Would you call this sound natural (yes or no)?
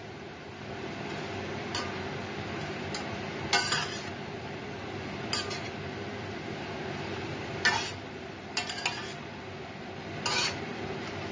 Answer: yes